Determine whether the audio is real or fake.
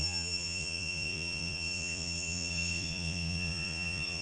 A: fake